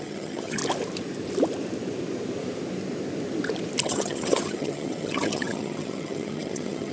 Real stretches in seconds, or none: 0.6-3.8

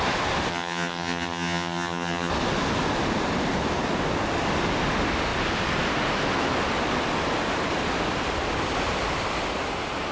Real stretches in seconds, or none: 0.0-0.5; 2.3-10.1

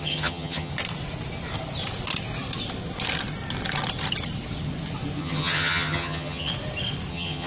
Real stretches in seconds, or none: 0.7-5.2; 6.5-7.1